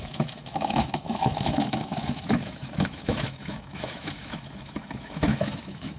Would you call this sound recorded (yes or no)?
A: no